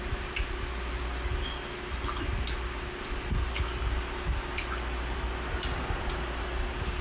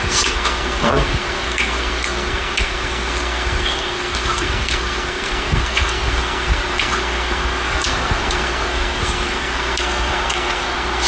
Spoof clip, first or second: second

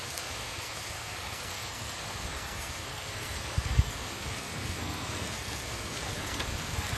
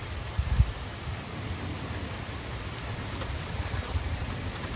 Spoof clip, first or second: first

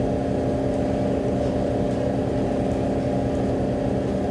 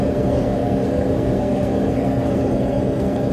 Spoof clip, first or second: second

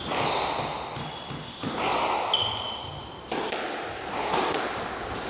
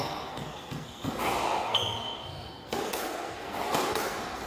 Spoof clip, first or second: second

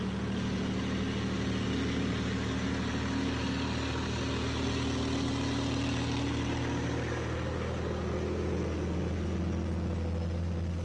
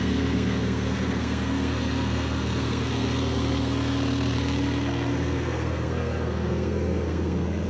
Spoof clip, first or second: second